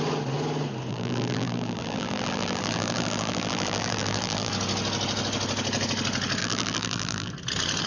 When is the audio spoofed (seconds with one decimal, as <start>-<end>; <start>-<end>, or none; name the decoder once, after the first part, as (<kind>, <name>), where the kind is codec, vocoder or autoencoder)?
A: 0.9-4.5 (vocoder, BigVGAN v2); 6.4-7.3